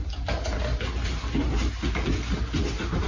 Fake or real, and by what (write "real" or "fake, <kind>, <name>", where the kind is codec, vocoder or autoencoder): real